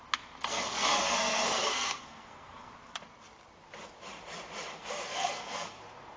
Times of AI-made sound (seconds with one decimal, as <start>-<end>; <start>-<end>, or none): 0.5-2.7; 4.7-5.8